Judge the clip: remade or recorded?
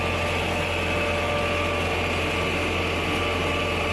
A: recorded